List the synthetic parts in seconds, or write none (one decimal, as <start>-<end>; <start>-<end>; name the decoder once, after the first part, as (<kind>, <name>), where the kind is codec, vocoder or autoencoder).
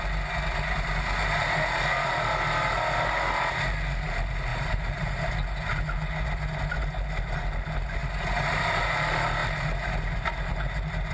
4.5-5.3 (vocoder, BigVGAN v2)